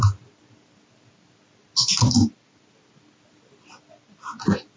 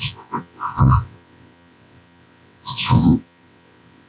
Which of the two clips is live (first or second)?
first